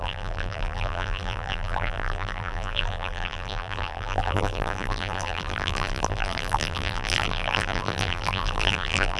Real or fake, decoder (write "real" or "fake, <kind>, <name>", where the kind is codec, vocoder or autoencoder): fake, vocoder, BigVGAN v2